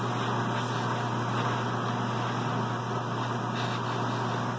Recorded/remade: recorded